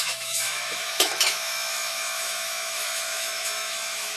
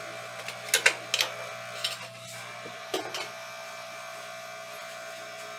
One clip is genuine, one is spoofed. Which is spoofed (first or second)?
first